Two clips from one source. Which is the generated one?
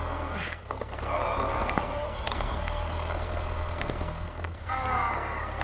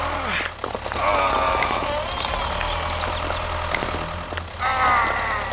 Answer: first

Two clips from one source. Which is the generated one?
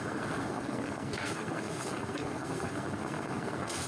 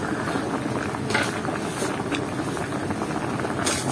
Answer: first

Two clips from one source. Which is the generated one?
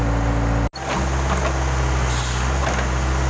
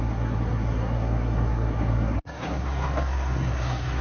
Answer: second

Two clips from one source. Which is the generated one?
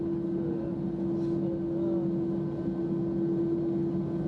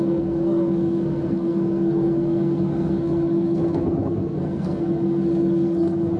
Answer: second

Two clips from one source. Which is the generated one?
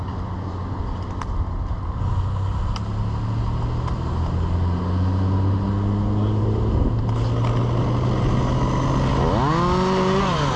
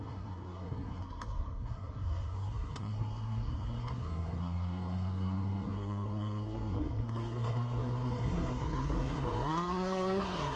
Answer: second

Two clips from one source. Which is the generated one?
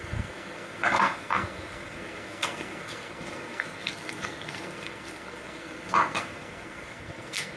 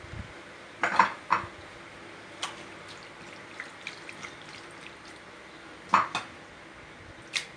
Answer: first